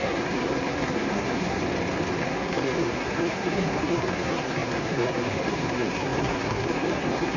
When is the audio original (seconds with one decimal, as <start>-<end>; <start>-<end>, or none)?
1.6-2.2